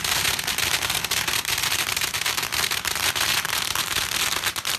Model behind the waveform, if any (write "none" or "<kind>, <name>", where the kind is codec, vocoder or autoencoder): vocoder, BigVGAN v2